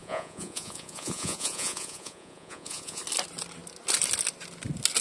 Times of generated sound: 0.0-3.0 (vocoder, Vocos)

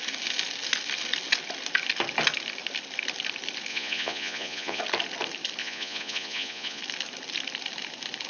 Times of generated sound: 3.7-4.8 (vocoder, Vocos); 5.6-6.8

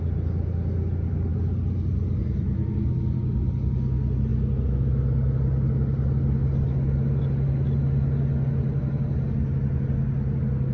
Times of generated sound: none

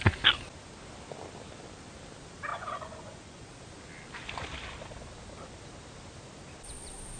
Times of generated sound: 2.5-3.5 (vocoder, Vocos)

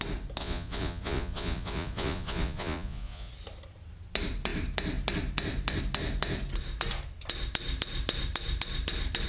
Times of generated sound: 0.4-3.3 (vocoder, Vocos)

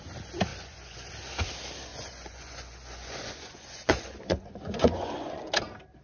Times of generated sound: 0.5-1.1 (vocoder, Vocos); 1.9-5.5

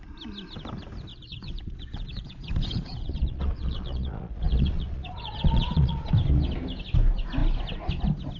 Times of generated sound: 1.1-6.1 (vocoder, Vocos)

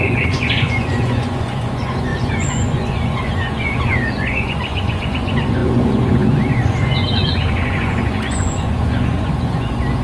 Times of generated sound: 0.0-10.0 (vocoder, Vocos)